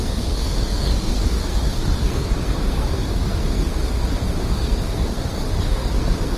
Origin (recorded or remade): remade